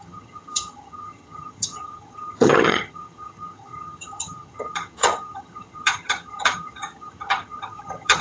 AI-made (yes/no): yes